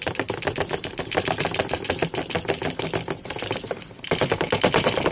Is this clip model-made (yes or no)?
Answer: yes